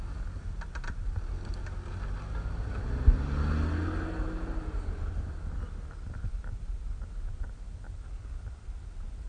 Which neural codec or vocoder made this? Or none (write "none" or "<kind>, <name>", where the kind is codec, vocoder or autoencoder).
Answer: none